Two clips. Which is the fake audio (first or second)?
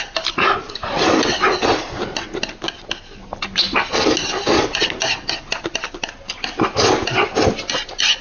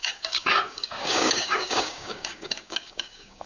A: second